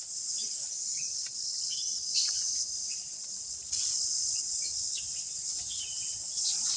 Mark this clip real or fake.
fake